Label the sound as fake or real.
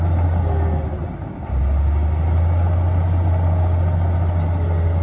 real